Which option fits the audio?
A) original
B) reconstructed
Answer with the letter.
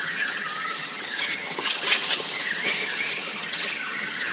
B